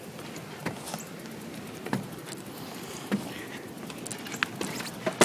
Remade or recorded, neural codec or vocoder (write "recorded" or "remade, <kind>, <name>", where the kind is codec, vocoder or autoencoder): recorded